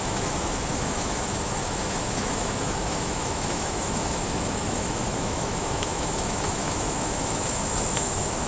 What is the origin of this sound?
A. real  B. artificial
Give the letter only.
B